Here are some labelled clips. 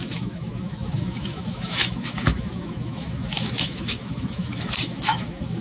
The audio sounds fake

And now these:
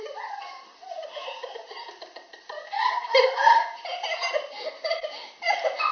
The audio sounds real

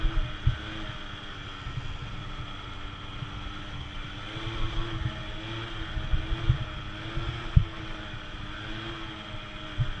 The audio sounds real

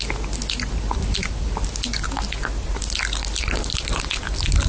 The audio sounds real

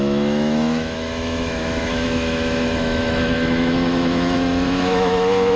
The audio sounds fake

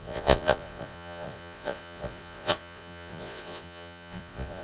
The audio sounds fake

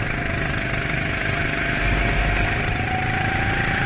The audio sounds real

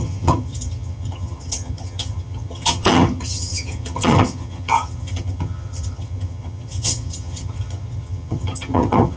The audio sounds fake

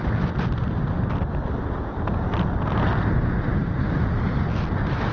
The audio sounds real